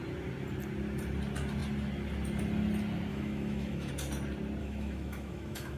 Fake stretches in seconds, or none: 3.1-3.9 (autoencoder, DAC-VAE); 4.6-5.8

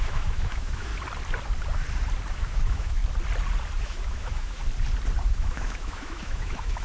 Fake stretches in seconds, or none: 0.0-0.9 (autoencoder, DAC-VAE); 2.3-3.0; 3.8-4.6; 5.3-6.8